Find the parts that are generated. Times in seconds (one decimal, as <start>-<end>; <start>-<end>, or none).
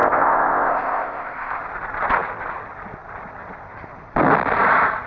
0.0-1.6